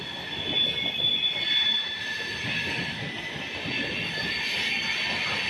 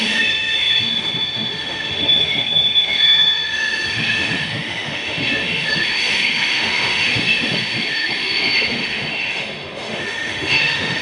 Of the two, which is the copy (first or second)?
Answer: second